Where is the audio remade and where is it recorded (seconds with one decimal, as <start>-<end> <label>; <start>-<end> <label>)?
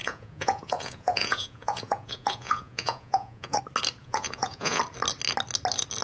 0.0-3.6 remade; 3.6-4.0 recorded; 4.0-4.8 remade; 4.8-6.0 recorded